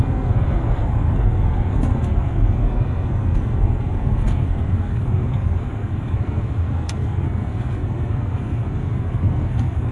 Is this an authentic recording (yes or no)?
no